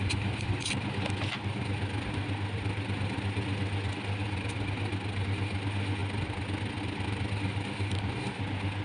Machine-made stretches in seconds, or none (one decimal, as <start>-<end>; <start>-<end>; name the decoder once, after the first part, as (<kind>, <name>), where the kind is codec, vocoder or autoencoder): none